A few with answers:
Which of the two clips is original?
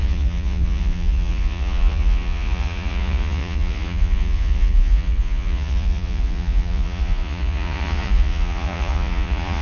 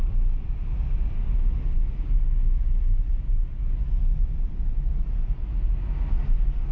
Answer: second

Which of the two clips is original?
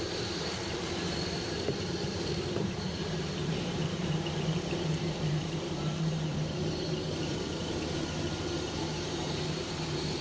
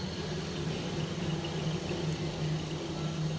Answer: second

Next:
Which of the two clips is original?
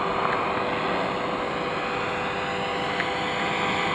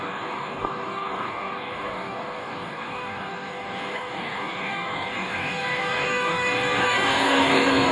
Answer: first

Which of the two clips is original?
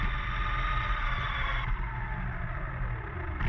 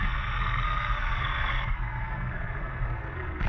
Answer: first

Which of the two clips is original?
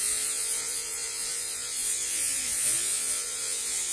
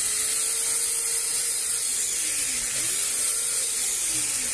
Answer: second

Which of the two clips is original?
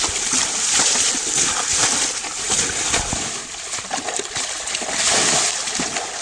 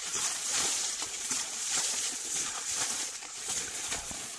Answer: first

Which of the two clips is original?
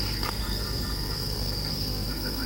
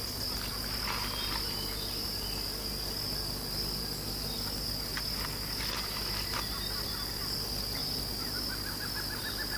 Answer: second